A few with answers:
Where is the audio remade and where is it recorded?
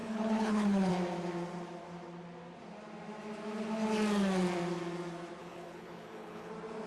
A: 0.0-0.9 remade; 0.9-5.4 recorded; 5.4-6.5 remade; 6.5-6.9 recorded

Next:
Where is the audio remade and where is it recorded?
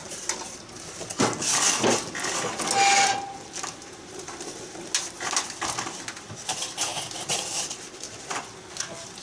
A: 0.0-9.2 recorded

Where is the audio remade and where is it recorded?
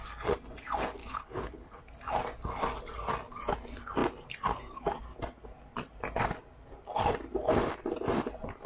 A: 0.0-1.0 recorded; 1.0-1.8 remade; 1.8-8.7 recorded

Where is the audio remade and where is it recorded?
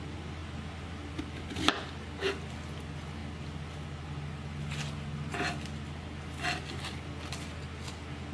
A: 0.0-8.3 recorded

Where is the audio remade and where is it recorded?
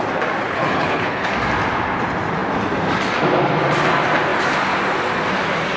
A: 0.0-0.4 recorded; 0.4-1.3 remade; 1.3-5.8 recorded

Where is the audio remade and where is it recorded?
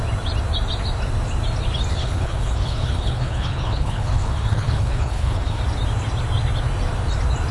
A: 0.0-2.0 recorded; 2.0-5.6 remade; 5.6-7.5 recorded